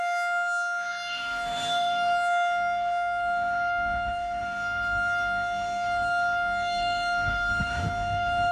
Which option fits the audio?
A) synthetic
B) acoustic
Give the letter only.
A